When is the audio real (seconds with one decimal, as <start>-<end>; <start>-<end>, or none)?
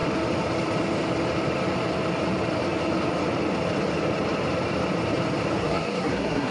0.0-5.6